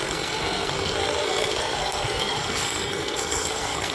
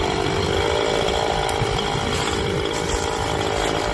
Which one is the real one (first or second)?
second